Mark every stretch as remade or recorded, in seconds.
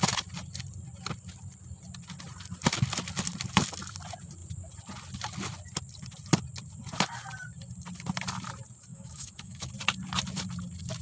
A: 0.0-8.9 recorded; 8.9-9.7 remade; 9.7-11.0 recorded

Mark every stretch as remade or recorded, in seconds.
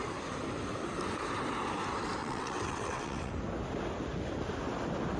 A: 0.0-2.2 recorded; 2.2-3.3 remade; 3.3-5.2 recorded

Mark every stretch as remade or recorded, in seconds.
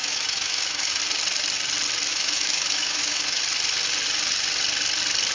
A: 0.0-1.0 remade; 1.0-2.1 recorded; 2.1-3.4 remade; 3.4-5.3 recorded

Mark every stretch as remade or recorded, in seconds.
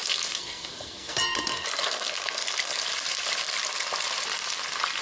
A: 0.0-2.8 remade; 2.8-5.0 recorded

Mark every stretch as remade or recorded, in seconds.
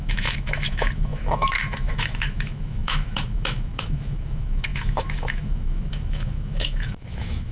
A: 0.0-7.5 remade